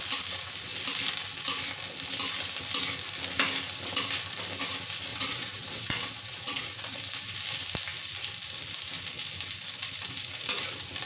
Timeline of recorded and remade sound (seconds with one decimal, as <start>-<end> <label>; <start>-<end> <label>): 0.0-5.1 recorded; 5.1-7.0 remade; 7.0-11.1 recorded